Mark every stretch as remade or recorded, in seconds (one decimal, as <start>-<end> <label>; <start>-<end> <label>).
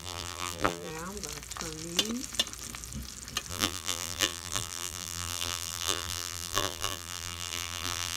0.0-0.9 remade; 0.9-3.5 recorded; 3.5-8.2 remade